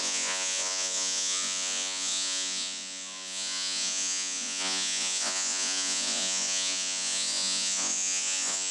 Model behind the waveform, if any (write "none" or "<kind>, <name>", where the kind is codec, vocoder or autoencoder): vocoder, Vocos